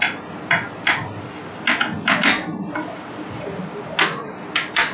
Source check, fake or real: real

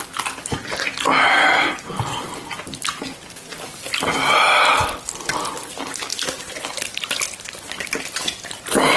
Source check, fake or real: real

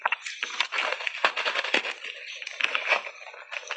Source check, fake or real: real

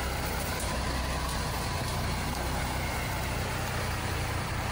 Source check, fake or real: fake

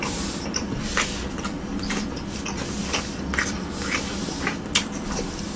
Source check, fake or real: fake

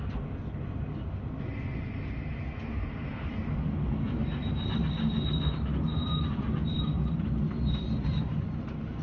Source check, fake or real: real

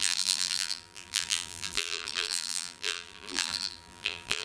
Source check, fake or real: fake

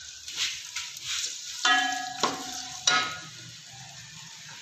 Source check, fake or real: fake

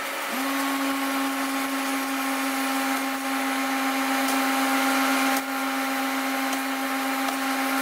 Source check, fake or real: real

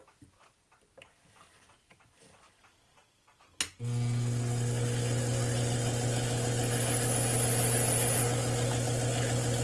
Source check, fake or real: real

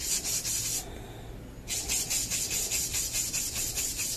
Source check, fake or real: real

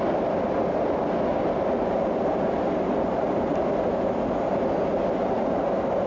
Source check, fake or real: real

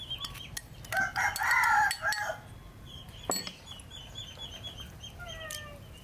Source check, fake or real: real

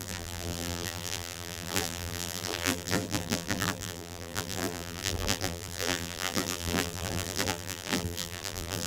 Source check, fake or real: fake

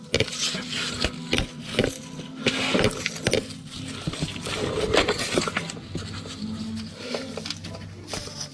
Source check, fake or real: real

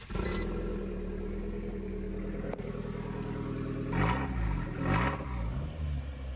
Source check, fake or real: real